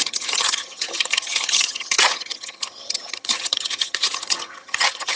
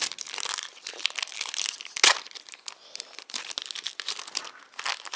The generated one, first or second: first